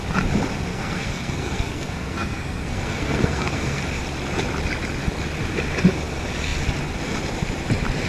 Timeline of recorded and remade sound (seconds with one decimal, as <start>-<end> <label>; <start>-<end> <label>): 0.0-0.7 recorded; 0.7-3.8 remade; 3.8-8.1 recorded